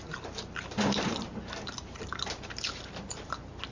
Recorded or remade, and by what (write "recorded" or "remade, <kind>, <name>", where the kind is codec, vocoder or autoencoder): recorded